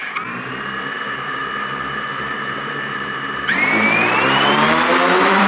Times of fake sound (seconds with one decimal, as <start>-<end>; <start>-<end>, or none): 0.5-1.4; 2.2-5.5